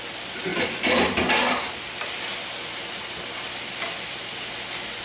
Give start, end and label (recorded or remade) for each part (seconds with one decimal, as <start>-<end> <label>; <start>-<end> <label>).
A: 0.0-5.0 remade